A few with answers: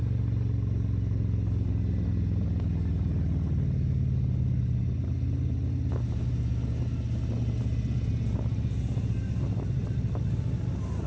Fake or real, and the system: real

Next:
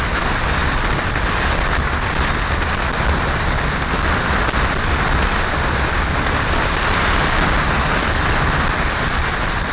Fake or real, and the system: real